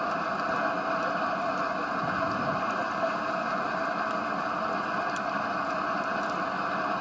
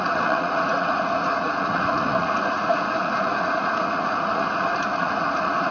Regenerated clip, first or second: second